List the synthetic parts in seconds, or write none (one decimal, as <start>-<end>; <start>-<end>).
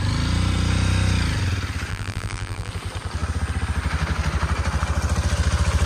1.9-2.7